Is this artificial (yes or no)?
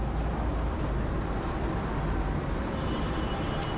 yes